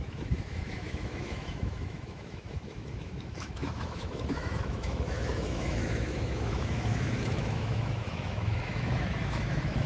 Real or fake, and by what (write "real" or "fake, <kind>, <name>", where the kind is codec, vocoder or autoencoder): fake, autoencoder, DAC-VAE